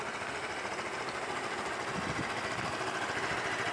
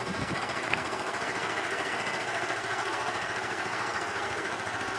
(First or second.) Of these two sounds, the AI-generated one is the second